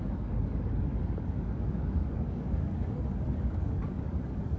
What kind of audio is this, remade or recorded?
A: remade